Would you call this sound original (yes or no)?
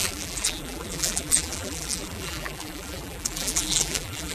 no